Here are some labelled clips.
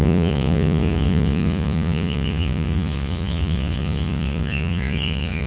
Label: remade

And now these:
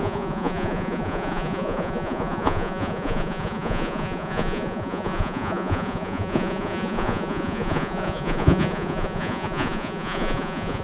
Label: remade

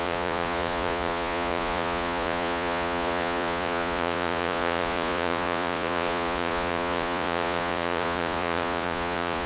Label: remade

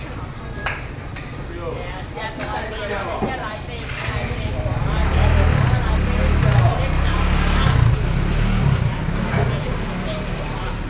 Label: recorded